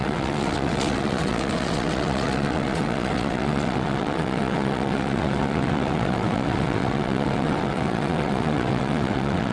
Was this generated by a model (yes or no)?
yes